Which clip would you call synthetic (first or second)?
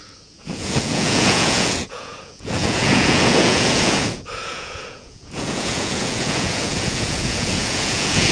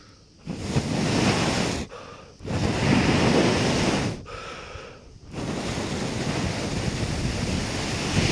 first